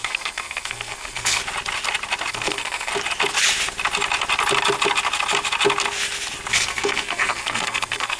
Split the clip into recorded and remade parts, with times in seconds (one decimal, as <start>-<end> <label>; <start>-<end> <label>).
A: 0.0-1.4 remade; 1.4-2.3 recorded; 2.3-2.9 remade; 2.9-6.5 recorded; 6.5-8.2 remade